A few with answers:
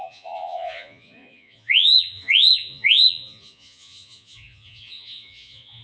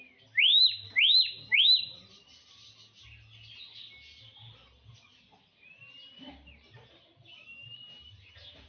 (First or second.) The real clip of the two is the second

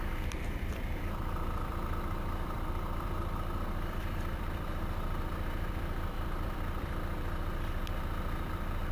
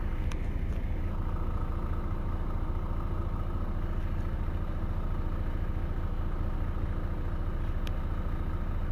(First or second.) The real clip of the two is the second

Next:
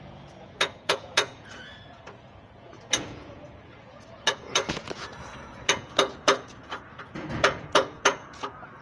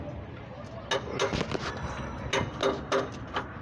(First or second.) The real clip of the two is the second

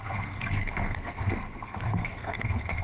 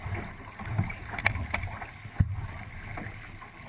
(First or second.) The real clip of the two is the second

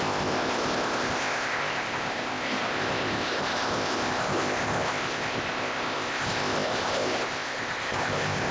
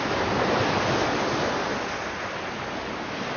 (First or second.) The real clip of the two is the second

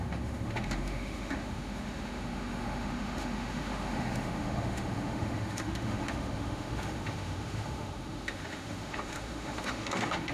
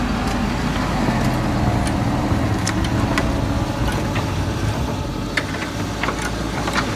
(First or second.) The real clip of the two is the second